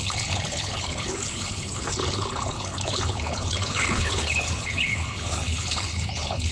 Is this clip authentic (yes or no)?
no